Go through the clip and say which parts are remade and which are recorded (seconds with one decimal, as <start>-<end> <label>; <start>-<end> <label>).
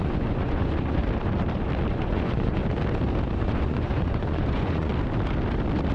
0.0-1.0 remade; 1.0-1.9 recorded; 1.9-2.6 remade; 2.6-3.4 recorded; 3.4-4.9 remade; 4.9-5.9 recorded